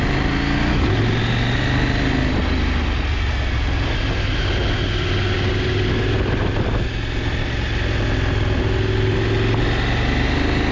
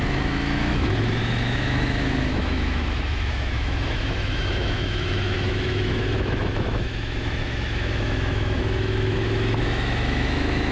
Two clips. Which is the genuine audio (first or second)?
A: first